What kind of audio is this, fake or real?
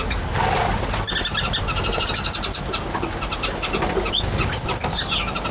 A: real